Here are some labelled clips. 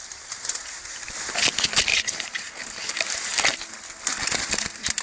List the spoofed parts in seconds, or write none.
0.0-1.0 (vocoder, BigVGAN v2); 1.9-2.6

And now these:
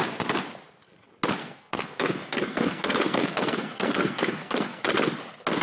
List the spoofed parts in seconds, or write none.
1.4-4.8 (codec, SNAC)

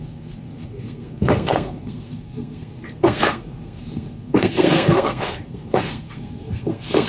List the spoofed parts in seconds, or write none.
0.0-7.1 (codec, SNAC)

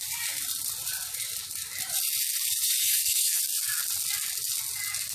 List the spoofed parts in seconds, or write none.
2.8-3.4 (codec, SNAC)

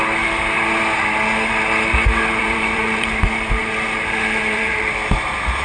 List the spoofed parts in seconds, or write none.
2.4-3.2 (vocoder, BigVGAN v2); 3.6-4.8

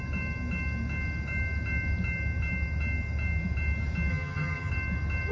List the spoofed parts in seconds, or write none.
4.1-4.7 (vocoder, HiFi-GAN)

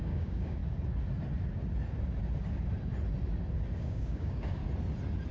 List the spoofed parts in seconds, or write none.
0.0-0.6 (codec, DAC); 3.8-4.6